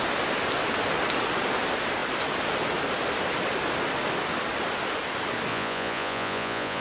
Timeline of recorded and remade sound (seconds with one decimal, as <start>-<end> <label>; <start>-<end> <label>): 0.0-5.5 recorded; 5.5-6.8 remade